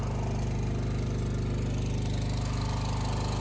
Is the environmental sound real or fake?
real